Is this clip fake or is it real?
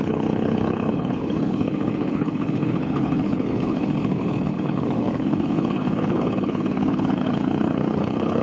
fake